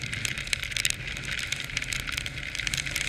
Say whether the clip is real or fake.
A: real